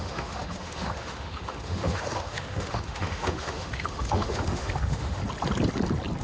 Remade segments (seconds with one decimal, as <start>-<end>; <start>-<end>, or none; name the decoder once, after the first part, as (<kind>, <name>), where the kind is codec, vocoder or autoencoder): 0.0-5.2 (autoencoder, DAC-VAE)

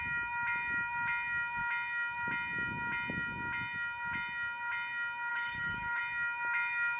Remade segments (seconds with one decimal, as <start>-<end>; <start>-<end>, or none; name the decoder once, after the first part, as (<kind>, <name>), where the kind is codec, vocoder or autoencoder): 5.3-6.0 (autoencoder, DAC-VAE)